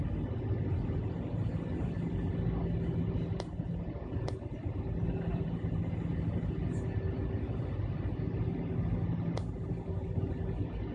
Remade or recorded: recorded